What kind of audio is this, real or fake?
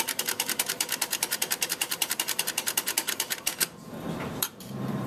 fake